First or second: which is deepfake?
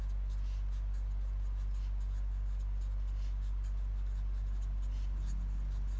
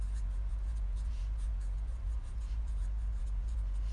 second